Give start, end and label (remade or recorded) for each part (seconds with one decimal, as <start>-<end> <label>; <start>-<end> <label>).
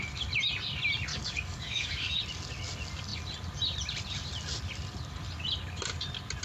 0.0-1.1 recorded; 1.1-2.2 remade; 2.2-6.4 recorded